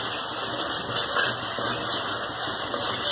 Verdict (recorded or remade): recorded